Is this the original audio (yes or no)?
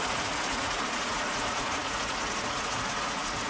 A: no